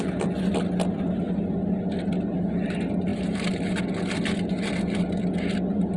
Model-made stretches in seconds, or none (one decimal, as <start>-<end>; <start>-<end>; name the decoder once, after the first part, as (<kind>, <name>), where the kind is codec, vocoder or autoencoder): none